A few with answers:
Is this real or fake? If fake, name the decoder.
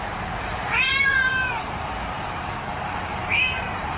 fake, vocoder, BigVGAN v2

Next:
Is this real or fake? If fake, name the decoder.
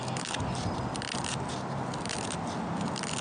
real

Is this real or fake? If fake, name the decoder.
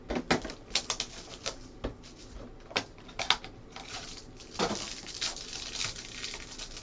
real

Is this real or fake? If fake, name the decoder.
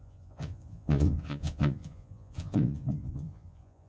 fake, vocoder, Vocos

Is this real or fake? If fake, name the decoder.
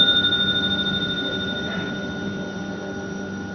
real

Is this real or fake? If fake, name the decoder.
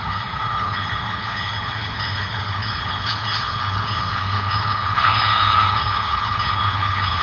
fake, codec, HILCodec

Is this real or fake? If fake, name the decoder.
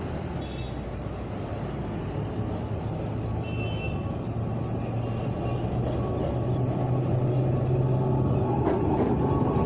real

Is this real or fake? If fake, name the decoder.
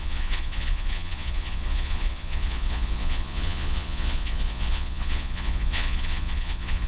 fake, vocoder, Vocos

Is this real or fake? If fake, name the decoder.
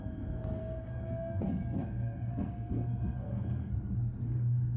fake, codec, SNAC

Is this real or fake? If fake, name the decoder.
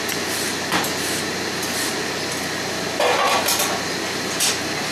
real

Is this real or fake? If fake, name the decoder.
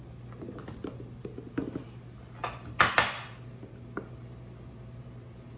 real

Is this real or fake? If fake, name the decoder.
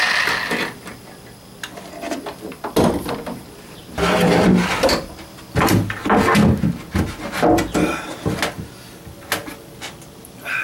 real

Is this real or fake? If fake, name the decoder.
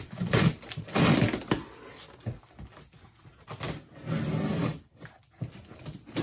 real